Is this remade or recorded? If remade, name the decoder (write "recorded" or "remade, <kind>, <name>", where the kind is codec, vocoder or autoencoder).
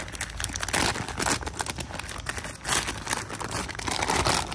recorded